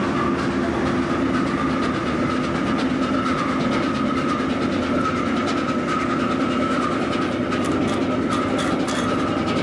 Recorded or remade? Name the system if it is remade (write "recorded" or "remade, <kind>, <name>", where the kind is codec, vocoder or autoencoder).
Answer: recorded